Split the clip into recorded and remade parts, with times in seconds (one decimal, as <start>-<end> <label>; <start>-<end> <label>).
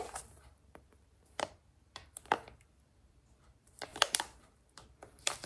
0.0-3.9 remade; 3.9-4.4 recorded; 4.4-5.5 remade